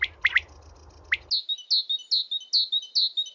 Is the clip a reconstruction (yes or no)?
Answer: no